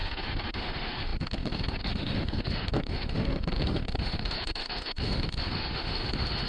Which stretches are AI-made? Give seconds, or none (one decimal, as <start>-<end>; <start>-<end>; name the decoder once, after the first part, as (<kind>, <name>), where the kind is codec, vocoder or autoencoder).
0.0-6.5 (autoencoder, DAC-VAE)